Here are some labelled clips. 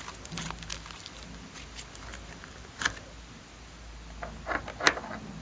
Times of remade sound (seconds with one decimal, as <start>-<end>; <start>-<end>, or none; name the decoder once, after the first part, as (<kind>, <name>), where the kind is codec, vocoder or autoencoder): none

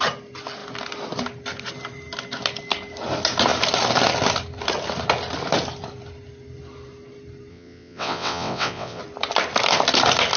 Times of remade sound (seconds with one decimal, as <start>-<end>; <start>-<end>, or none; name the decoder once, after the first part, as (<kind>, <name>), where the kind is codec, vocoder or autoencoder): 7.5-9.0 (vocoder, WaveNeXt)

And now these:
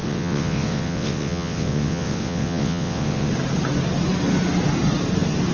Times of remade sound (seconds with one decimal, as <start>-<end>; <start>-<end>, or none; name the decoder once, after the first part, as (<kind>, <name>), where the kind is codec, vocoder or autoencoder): 0.0-3.3 (vocoder, WaveNeXt)

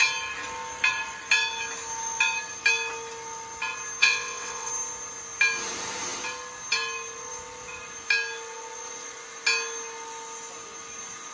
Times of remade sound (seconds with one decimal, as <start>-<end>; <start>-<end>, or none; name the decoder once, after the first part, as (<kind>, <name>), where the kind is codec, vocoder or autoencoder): 4.0-4.7 (vocoder, WaveNeXt)

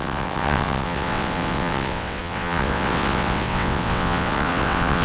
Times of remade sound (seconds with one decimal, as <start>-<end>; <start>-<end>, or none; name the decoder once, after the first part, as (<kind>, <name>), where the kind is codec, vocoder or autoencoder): 0.0-5.0 (vocoder, WaveNeXt)

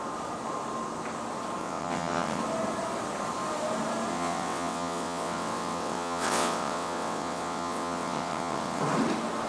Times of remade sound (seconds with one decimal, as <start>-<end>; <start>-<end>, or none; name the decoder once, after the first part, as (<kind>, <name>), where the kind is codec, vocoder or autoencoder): 1.6-2.4 (vocoder, WaveNeXt); 4.1-8.8

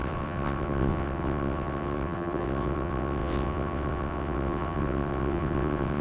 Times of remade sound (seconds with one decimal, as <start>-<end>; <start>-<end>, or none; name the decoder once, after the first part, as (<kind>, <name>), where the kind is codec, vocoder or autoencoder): 0.0-6.0 (vocoder, WaveNeXt)

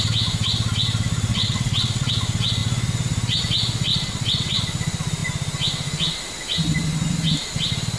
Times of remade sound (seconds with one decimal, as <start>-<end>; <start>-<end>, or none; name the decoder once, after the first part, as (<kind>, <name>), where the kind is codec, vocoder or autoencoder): 1.3-2.1 (vocoder, WaveNeXt); 3.9-4.6